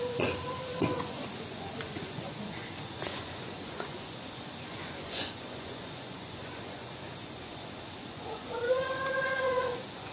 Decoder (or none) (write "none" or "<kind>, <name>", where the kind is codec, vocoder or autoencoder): vocoder, Vocos